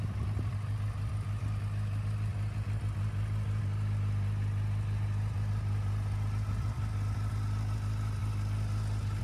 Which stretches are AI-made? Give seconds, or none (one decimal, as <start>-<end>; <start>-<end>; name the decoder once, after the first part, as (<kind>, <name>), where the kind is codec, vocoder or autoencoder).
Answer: none